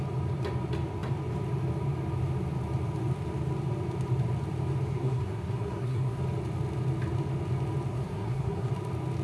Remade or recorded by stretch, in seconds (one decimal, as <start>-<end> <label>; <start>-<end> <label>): 0.0-4.9 recorded; 4.9-6.2 remade; 6.2-7.9 recorded; 7.9-8.7 remade; 8.7-9.2 recorded

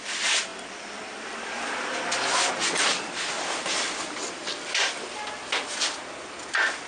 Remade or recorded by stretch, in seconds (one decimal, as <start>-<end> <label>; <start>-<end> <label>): 0.0-6.9 recorded